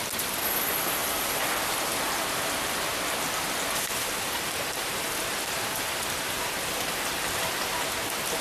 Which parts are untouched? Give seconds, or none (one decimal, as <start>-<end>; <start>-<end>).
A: 0.0-8.4